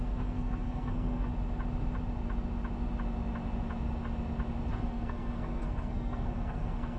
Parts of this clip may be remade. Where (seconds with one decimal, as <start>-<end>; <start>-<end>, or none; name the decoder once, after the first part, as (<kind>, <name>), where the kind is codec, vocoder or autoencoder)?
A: 0.0-1.3 (codec, SNAC); 4.7-7.0